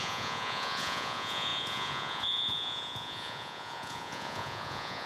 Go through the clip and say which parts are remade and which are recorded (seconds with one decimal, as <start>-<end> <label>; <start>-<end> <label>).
0.0-5.1 remade